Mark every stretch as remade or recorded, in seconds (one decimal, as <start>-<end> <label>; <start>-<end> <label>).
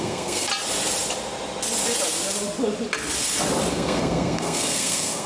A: 0.0-0.5 remade; 0.5-3.7 recorded; 3.7-5.3 remade